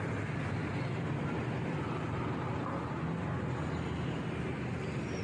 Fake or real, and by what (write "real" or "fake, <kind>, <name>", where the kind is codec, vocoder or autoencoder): real